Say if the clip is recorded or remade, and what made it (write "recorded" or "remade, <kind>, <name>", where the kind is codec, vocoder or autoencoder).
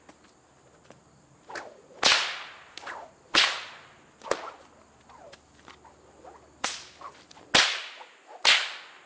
recorded